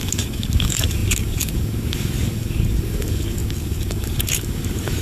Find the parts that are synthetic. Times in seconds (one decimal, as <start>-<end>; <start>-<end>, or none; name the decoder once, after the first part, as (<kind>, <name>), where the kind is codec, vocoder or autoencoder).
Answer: 0.0-5.0 (codec, DAC)